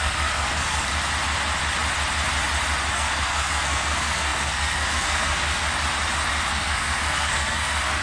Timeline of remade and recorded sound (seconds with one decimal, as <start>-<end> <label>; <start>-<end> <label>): 0.0-0.9 remade; 0.9-2.9 recorded; 2.9-5.6 remade; 5.6-6.5 recorded; 6.5-8.0 remade